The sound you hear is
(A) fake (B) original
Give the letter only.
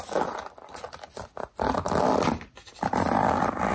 B